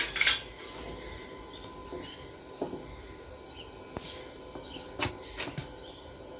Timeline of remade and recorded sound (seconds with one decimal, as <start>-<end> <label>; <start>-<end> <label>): 0.0-6.4 recorded